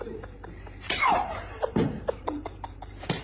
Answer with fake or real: fake